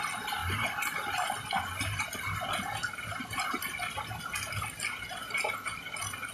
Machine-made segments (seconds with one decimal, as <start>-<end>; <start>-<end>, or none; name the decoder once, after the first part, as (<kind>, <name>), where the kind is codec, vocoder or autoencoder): none